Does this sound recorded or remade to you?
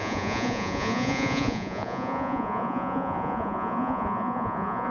remade